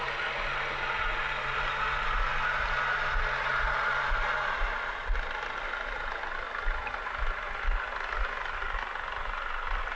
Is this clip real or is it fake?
real